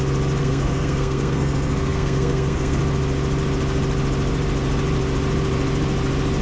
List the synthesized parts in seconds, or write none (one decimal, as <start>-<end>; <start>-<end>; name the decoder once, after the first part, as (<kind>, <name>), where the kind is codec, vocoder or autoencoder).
0.4-2.8 (codec, SNAC)